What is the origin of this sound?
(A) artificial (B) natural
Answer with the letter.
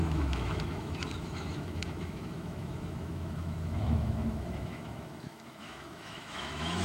A